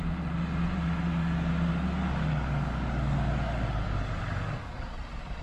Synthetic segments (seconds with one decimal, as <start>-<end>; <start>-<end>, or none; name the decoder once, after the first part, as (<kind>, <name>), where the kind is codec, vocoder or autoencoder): 1.7-4.9 (codec, DAC)